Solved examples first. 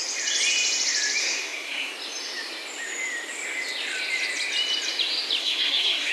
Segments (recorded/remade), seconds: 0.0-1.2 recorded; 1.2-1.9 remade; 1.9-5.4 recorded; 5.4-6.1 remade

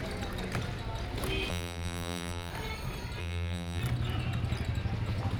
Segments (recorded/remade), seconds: 0.0-1.5 recorded; 1.5-2.5 remade; 2.5-3.2 recorded; 3.2-3.8 remade; 3.8-5.4 recorded

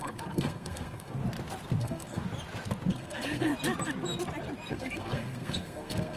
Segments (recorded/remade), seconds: 0.0-1.2 remade; 1.2-1.8 recorded; 1.8-2.2 remade; 2.2-2.9 recorded; 2.9-3.5 remade; 3.5-4.7 recorded; 4.7-6.2 remade

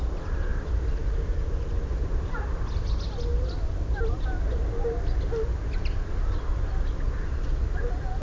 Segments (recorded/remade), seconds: 0.0-8.2 recorded